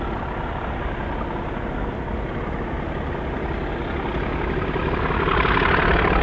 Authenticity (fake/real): real